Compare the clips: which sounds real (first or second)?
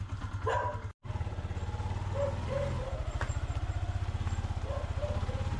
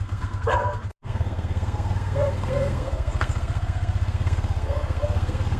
first